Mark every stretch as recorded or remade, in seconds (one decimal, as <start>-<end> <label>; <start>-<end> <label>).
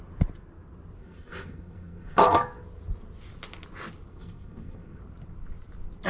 0.0-1.0 recorded; 1.0-2.6 remade; 2.6-4.1 recorded; 4.1-5.0 remade; 5.0-6.1 recorded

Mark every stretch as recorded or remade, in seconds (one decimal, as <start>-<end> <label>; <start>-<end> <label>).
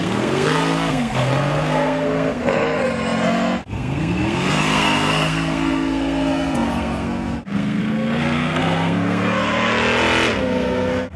0.0-9.7 remade; 9.7-10.4 recorded; 10.4-11.2 remade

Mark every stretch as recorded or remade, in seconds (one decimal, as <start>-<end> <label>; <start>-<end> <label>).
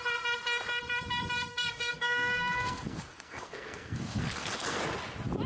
0.0-1.5 recorded; 1.5-4.8 remade; 4.8-5.5 recorded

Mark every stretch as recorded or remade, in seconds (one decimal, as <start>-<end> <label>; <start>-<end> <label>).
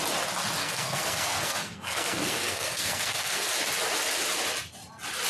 0.0-0.6 recorded; 0.6-3.5 remade; 3.5-5.3 recorded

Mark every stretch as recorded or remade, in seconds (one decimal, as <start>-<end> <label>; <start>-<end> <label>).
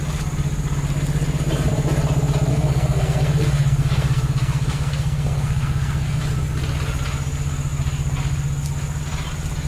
0.0-2.5 recorded; 2.5-6.2 remade; 6.2-9.7 recorded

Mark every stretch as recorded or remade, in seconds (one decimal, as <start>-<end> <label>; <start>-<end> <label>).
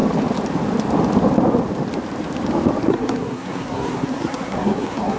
0.0-2.9 recorded; 2.9-5.2 remade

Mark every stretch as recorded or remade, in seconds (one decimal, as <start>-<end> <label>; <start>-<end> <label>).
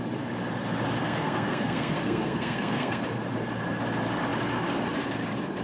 0.0-1.0 recorded; 1.0-3.0 remade; 3.0-5.6 recorded